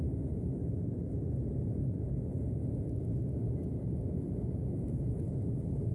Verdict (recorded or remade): recorded